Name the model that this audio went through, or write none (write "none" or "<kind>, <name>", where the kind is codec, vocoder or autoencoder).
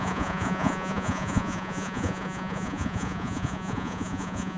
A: vocoder, Vocos